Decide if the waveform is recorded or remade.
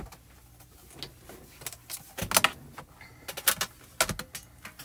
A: recorded